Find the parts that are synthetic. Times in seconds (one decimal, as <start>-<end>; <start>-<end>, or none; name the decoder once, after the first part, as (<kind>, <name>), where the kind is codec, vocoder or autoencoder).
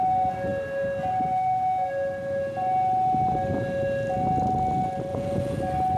5.1-5.6 (vocoder, Vocos)